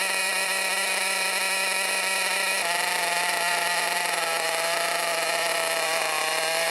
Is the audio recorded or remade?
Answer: remade